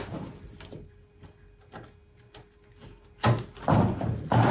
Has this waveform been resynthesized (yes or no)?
no